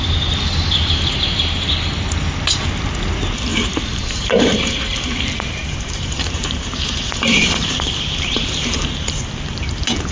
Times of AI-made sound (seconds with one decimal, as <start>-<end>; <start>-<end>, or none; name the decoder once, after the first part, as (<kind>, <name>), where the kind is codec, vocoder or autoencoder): 3.5-4.7 (vocoder, BigVGAN v2); 5.6-9.2